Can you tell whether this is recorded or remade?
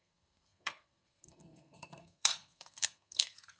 remade